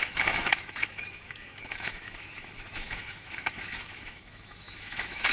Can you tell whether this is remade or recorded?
remade